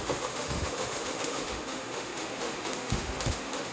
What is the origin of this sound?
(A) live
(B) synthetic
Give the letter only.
B